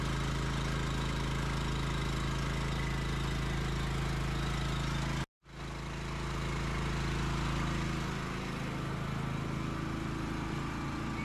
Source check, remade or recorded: recorded